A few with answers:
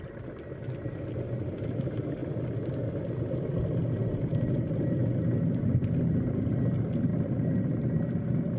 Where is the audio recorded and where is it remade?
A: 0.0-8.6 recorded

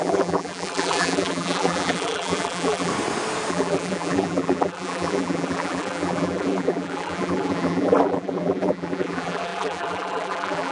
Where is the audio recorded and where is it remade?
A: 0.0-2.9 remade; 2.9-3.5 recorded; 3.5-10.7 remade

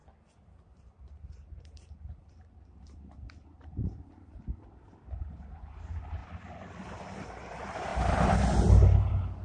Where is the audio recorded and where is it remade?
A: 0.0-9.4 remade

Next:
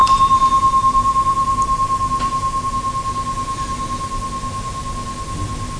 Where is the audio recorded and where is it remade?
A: 0.0-2.7 remade; 2.7-5.8 recorded

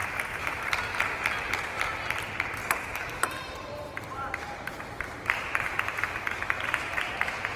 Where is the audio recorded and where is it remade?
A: 0.0-1.1 remade; 1.1-2.5 recorded; 2.5-7.1 remade; 7.1-7.6 recorded